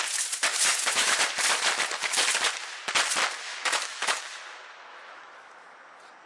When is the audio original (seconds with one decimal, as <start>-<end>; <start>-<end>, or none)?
0.0-0.5; 1.2-3.5; 4.2-4.9; 5.5-6.3